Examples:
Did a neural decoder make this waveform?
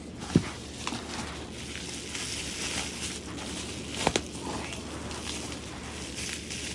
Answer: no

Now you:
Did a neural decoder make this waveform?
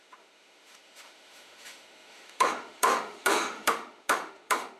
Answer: yes